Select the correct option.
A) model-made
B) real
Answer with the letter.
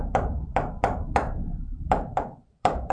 A